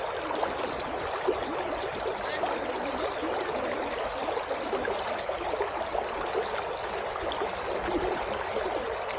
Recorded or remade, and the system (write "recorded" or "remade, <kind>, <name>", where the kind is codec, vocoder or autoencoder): recorded